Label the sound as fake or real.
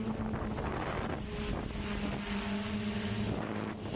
real